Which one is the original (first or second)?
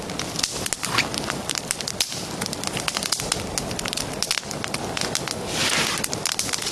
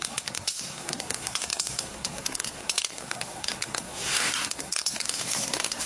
first